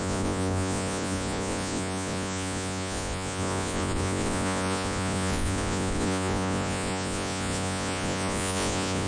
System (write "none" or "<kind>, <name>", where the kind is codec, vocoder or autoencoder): vocoder, Vocos